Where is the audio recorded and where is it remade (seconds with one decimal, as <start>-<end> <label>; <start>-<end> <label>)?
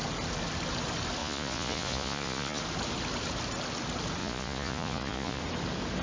0.0-1.2 recorded; 1.2-2.6 remade; 2.6-4.2 recorded; 4.2-5.4 remade; 5.4-6.0 recorded